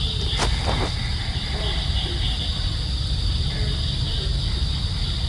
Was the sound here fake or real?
real